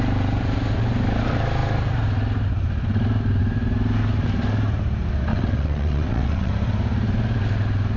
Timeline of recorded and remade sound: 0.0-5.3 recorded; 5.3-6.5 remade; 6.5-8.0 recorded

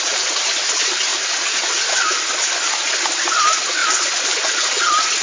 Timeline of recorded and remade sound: 0.0-5.2 recorded

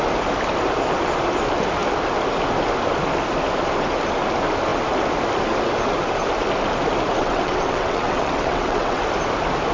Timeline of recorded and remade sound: 0.0-7.2 recorded; 7.2-9.0 remade; 9.0-9.7 recorded

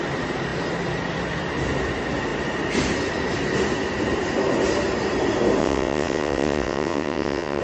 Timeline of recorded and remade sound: 0.0-5.6 recorded; 5.6-7.6 remade

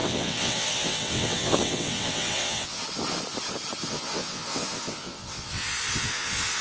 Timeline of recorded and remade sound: 0.0-2.8 remade; 2.8-3.9 recorded; 3.9-6.6 remade

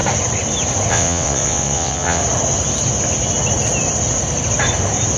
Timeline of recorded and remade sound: 0.0-0.9 recorded; 0.9-2.2 remade; 2.2-5.2 recorded